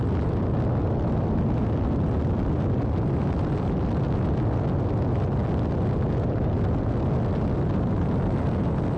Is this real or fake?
real